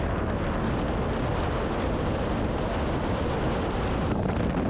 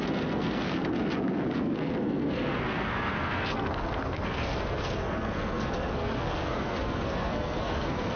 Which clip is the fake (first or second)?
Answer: second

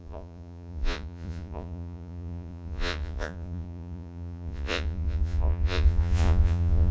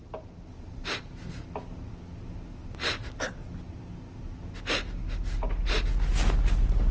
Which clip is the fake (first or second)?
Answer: first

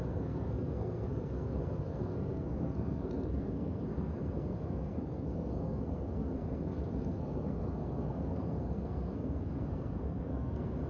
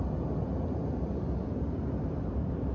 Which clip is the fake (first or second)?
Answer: first